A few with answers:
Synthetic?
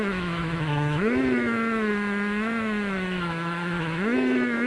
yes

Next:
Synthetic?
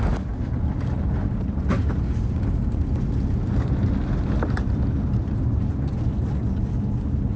no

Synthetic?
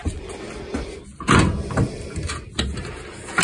no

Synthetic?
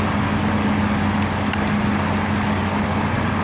no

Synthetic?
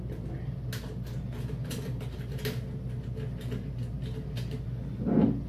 no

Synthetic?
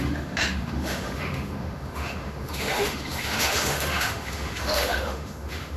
yes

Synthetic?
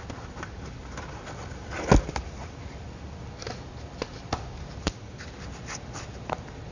no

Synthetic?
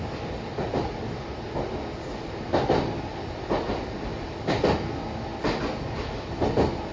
no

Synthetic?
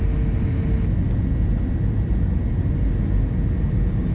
no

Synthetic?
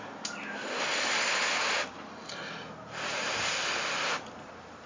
no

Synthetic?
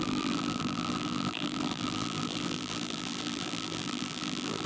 yes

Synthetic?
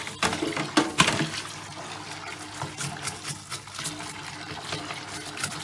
no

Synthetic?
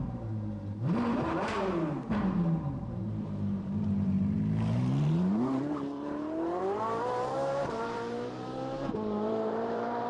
yes